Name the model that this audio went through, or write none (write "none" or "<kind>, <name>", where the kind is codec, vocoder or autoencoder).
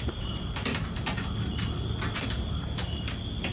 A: none